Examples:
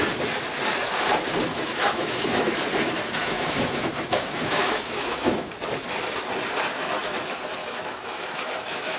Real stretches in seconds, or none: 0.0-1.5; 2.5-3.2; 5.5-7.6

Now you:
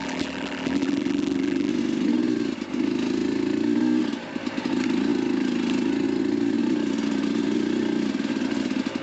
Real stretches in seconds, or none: 1.7-9.0

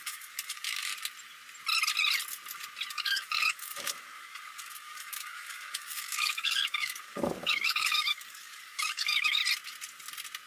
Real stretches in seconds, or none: 0.9-2.9; 9.4-10.5

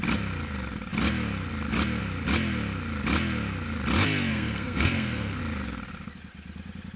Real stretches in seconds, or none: 0.0-4.3; 5.4-7.0

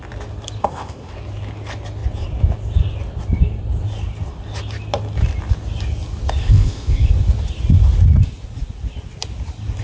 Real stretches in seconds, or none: 0.0-0.6; 1.1-6.4; 7.1-9.8